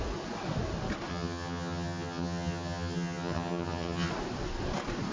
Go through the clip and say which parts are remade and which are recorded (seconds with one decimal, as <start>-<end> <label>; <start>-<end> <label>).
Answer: 0.0-1.1 recorded; 1.1-4.1 remade; 4.1-5.1 recorded